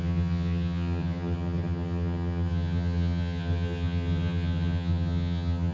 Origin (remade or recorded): remade